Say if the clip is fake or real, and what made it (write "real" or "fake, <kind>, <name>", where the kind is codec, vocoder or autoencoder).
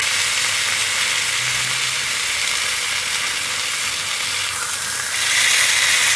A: real